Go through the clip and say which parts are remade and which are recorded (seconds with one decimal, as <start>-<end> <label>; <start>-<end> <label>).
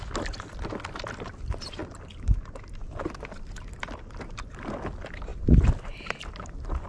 0.0-6.9 recorded